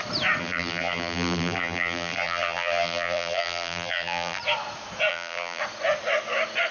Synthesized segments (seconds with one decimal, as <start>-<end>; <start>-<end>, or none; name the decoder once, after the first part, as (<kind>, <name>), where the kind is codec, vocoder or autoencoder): 0.4-4.4 (vocoder, BigVGAN v2); 5.1-5.6

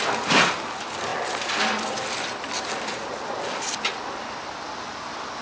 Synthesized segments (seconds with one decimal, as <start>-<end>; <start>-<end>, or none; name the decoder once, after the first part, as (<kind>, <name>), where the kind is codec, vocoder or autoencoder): none

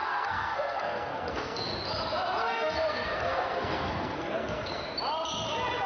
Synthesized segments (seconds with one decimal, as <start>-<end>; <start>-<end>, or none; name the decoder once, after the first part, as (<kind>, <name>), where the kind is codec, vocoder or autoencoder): 0.0-1.7 (codec, SNAC); 2.4-4.8